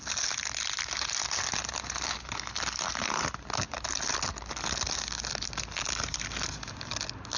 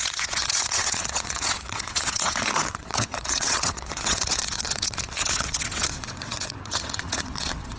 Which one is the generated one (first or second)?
second